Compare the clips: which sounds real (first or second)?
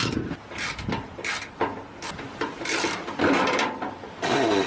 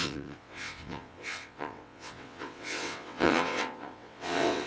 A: first